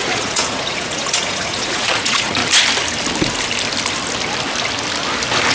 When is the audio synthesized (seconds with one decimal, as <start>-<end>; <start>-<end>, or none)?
0.0-2.4

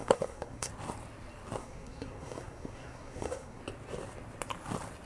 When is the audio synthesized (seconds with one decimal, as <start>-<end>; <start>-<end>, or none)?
0.0-0.7; 1.6-3.6

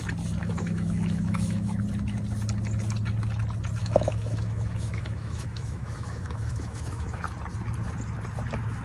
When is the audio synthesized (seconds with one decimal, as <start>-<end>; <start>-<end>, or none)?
0.4-1.8; 3.8-7.2

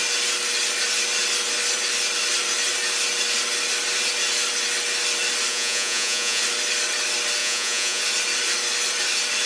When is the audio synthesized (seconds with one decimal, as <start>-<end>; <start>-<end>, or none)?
5.5-6.4; 7.4-8.0

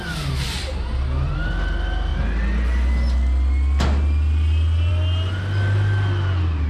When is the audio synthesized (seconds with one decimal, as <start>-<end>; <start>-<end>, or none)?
none

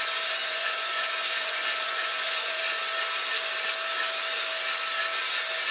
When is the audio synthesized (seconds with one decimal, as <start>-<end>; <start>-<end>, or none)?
0.4-2.6